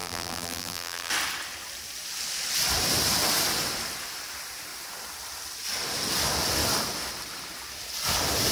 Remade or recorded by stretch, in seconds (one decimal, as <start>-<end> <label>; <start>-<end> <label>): 0.0-1.1 remade; 1.1-8.5 recorded